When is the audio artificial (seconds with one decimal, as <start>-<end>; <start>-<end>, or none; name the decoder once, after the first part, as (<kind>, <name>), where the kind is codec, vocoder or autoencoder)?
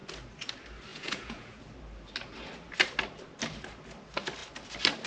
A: 0.9-1.6 (vocoder, Vocos)